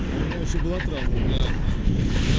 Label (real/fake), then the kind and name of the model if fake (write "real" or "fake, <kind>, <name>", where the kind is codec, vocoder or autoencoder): real